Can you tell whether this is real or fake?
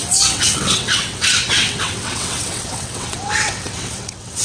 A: fake